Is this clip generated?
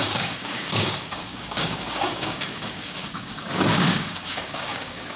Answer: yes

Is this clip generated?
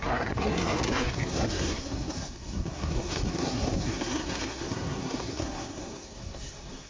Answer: yes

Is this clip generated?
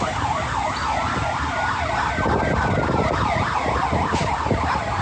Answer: no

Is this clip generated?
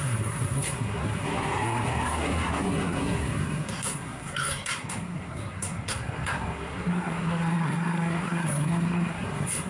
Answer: yes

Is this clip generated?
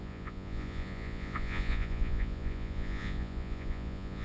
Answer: yes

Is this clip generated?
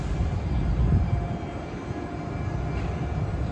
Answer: no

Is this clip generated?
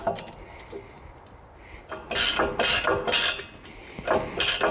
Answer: no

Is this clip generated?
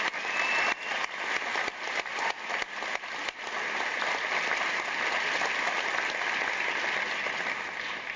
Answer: no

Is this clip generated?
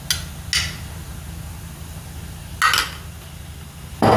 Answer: no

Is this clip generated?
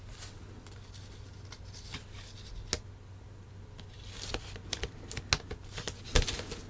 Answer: no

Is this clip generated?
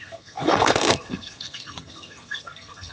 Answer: yes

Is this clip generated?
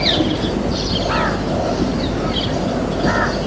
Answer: no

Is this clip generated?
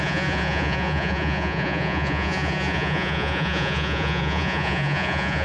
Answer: yes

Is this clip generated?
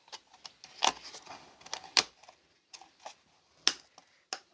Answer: no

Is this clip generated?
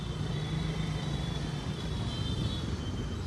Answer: no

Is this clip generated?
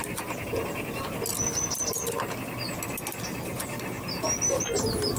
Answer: no